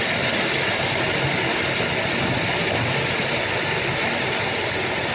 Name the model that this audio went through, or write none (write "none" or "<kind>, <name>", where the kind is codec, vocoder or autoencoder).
none